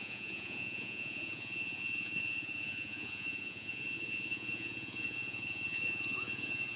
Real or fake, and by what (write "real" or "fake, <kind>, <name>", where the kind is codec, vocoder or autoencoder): fake, vocoder, Vocos